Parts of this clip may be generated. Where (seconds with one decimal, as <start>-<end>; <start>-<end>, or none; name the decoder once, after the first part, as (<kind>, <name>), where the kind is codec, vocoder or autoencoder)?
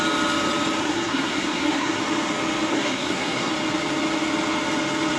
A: 0.8-2.0 (codec, SNAC); 2.7-3.5